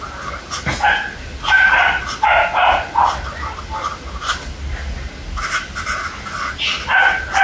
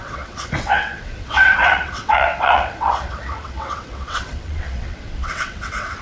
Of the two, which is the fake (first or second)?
second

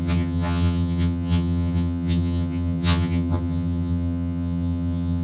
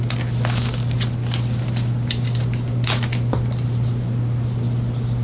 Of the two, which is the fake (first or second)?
first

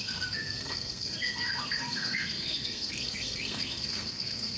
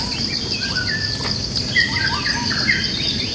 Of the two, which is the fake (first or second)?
first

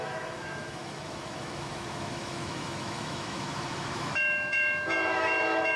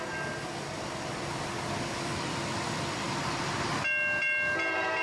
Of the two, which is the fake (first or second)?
first